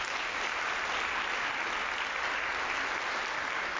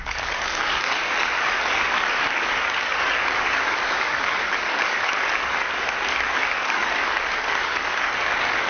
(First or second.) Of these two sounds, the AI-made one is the second